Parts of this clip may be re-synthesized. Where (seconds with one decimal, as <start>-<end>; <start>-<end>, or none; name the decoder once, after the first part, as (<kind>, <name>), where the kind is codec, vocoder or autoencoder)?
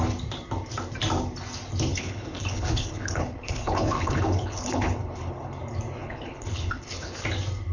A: 1.9-5.6 (codec, HILCodec); 6.0-7.2